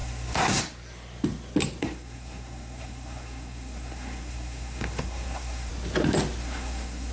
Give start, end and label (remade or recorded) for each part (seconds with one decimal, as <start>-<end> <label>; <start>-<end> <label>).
0.0-0.6 remade; 0.6-1.8 recorded; 1.8-5.7 remade; 5.7-6.4 recorded; 6.4-7.1 remade